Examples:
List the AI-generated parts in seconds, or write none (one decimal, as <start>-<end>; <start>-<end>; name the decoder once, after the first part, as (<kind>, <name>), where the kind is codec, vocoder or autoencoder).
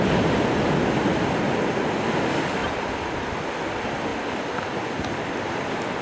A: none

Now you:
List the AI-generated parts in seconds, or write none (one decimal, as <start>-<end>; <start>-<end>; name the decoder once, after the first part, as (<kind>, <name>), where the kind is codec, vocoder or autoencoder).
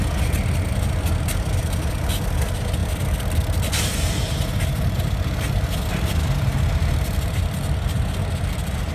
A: none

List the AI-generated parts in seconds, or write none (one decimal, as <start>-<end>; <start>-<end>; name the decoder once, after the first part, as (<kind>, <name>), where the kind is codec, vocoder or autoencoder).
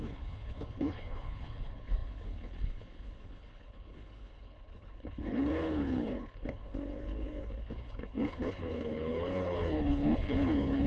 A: 0.0-10.9 (codec, HILCodec)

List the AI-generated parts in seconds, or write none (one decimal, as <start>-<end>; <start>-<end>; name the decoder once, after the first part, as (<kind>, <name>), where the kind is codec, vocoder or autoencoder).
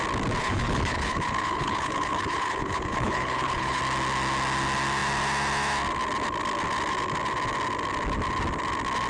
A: 0.4-3.8 (codec, HILCodec)